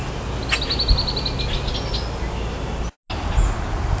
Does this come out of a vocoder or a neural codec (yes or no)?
no